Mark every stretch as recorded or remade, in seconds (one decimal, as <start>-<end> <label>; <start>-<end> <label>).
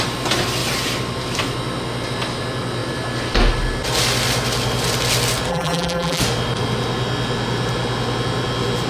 0.0-5.5 recorded; 5.5-6.2 remade; 6.2-8.9 recorded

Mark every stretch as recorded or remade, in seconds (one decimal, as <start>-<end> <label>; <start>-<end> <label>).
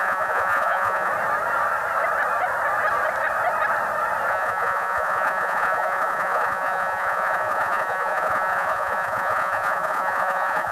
0.0-1.1 remade; 1.1-4.3 recorded; 4.3-10.7 remade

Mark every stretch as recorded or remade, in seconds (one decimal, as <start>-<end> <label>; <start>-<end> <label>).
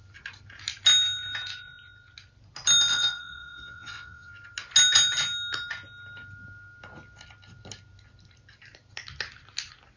0.0-2.9 recorded; 2.9-4.3 remade; 4.3-10.0 recorded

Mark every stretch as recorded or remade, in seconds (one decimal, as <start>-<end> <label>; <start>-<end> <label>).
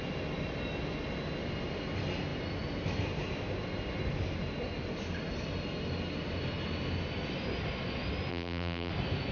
0.0-8.3 recorded; 8.3-8.9 remade; 8.9-9.3 recorded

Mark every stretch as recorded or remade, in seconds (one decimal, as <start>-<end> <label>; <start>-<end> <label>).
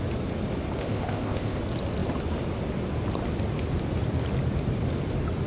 0.0-0.8 recorded; 0.8-1.6 remade; 1.6-5.5 recorded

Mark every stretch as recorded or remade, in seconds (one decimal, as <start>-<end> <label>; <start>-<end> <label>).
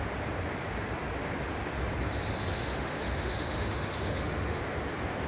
0.0-2.5 recorded; 2.5-4.6 remade; 4.6-5.3 recorded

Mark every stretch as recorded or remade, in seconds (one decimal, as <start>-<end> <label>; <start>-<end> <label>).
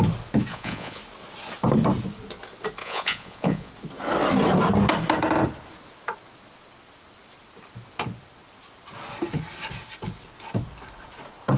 0.0-0.5 recorded; 0.5-1.0 remade; 1.0-2.8 recorded; 2.8-3.7 remade; 3.7-11.6 recorded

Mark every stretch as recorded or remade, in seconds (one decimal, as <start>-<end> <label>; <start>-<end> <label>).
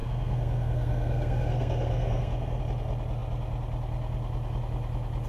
0.0-2.6 remade; 2.6-5.3 recorded